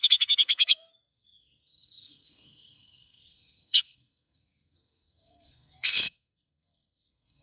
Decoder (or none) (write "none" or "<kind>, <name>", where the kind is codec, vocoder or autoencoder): codec, SNAC